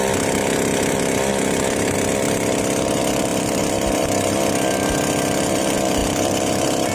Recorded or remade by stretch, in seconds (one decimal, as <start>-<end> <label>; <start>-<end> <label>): 0.0-3.3 recorded; 3.3-4.1 remade; 4.1-6.0 recorded; 6.0-6.9 remade